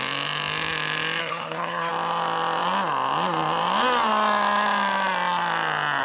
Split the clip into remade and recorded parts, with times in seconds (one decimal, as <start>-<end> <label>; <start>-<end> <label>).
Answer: 0.0-1.2 recorded; 1.2-1.9 remade; 1.9-6.0 recorded